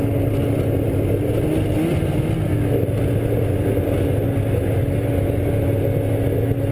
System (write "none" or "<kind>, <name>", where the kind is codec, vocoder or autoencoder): none